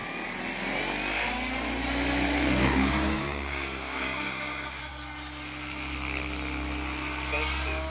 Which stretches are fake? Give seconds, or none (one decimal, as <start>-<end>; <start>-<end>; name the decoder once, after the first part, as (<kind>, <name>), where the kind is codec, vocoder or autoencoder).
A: 2.6-4.9 (codec, DAC)